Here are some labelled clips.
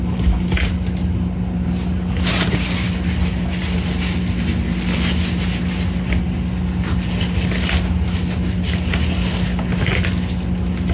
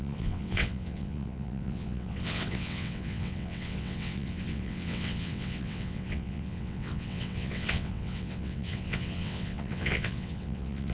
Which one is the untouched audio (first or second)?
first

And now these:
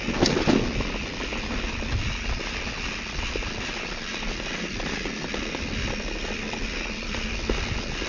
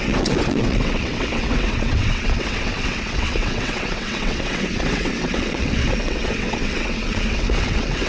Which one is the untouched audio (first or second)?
first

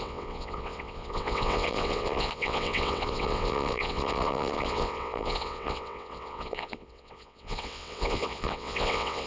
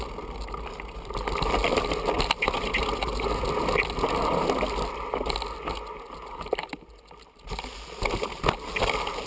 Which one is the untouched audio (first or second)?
second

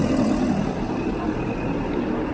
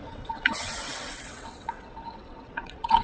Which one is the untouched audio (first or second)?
first